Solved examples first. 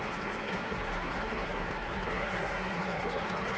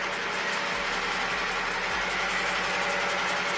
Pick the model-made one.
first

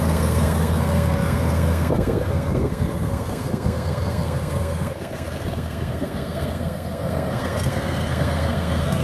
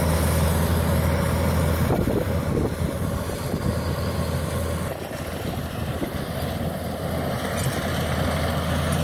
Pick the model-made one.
first